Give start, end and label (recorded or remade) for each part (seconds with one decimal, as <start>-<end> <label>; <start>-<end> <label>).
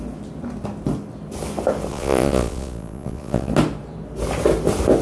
0.0-1.9 recorded; 1.9-3.5 remade; 3.5-5.0 recorded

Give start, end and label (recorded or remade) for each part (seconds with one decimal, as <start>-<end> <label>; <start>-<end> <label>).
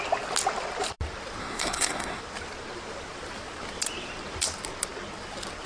0.0-1.4 recorded; 1.4-2.2 remade; 2.2-5.7 recorded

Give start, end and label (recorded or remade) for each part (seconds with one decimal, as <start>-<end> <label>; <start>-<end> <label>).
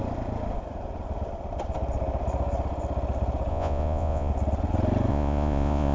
0.0-3.5 recorded; 3.5-4.3 remade; 4.3-5.1 recorded; 5.1-5.9 remade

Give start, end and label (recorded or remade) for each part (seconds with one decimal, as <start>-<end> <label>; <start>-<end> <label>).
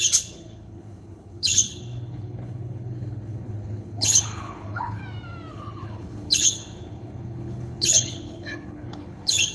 0.0-5.0 remade; 5.0-5.5 recorded; 5.5-9.5 remade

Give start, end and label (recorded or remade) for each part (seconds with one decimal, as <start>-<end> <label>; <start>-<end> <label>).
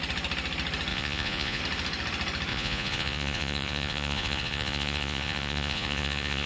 0.0-0.9 recorded; 0.9-1.6 remade; 1.6-2.5 recorded; 2.5-6.5 remade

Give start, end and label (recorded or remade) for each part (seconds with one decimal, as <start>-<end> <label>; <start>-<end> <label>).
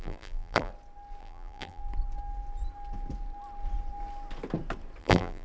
0.0-0.7 remade; 0.7-1.2 recorded; 1.2-1.8 remade; 1.8-5.0 recorded; 5.0-5.4 remade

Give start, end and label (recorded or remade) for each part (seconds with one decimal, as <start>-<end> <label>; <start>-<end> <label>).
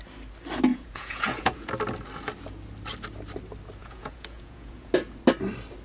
0.0-0.7 recorded; 0.7-1.7 remade; 1.7-3.8 recorded; 3.8-4.9 remade; 4.9-5.8 recorded